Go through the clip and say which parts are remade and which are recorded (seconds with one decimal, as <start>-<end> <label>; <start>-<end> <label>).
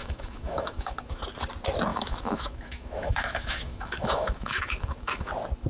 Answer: 0.0-1.2 remade; 1.2-1.9 recorded; 1.9-5.3 remade; 5.3-5.7 recorded